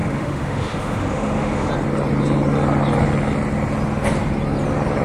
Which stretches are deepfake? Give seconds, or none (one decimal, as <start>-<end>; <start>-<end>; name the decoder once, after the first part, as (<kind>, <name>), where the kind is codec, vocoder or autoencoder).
0.0-1.7 (autoencoder, DAC-VAE)